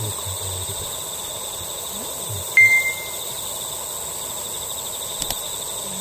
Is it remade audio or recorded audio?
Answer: recorded